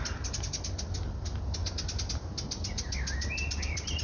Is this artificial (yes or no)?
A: no